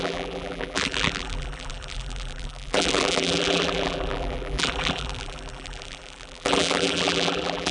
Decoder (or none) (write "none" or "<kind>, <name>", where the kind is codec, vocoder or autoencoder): vocoder, BigVGAN v2